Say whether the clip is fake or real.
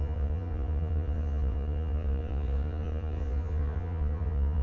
fake